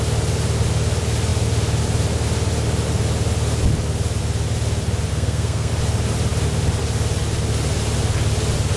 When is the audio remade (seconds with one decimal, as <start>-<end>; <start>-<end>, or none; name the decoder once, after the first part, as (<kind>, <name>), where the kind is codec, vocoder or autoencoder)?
5.1-5.7 (codec, SNAC)